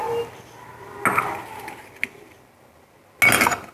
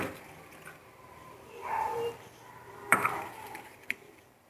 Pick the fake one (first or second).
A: second